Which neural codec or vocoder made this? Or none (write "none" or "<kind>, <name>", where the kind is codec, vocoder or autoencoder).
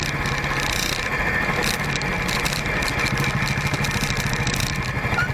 none